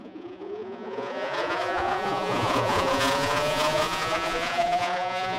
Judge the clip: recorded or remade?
remade